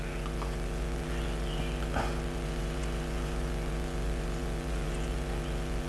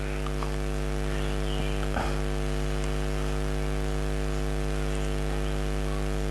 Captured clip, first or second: second